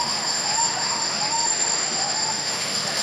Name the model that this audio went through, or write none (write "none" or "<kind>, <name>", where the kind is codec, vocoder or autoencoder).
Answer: autoencoder, DAC-VAE